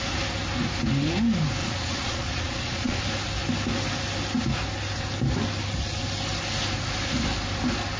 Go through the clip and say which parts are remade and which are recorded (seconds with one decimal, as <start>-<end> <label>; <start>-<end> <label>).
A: 0.0-1.6 recorded; 1.6-3.0 remade; 3.0-8.0 recorded